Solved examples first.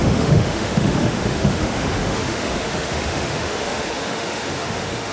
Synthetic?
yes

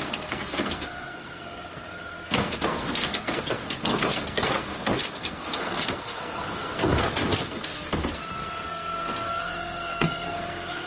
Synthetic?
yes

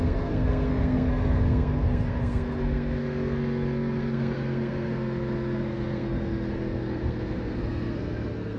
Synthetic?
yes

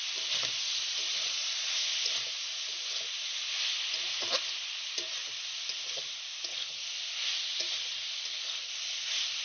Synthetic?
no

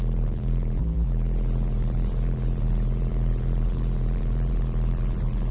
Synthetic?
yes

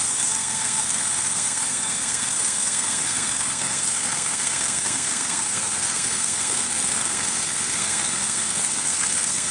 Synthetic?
yes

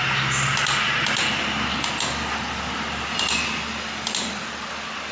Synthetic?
no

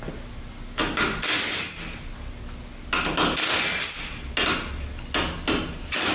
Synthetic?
no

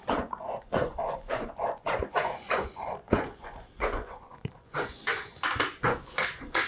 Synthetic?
yes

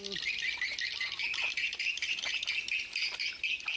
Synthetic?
no